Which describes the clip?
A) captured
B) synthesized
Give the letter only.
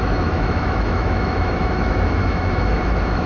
B